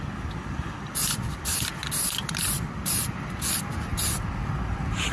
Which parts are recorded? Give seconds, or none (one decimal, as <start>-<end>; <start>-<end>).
0.0-5.1